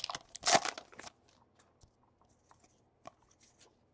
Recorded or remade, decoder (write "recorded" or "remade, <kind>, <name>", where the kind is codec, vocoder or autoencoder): recorded